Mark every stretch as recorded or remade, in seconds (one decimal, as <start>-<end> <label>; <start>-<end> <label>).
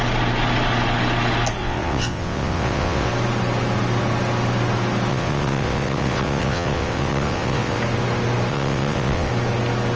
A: 0.0-1.6 recorded; 1.6-3.1 remade; 3.1-5.1 recorded; 5.1-7.8 remade; 7.8-8.5 recorded; 8.5-9.3 remade; 9.3-10.0 recorded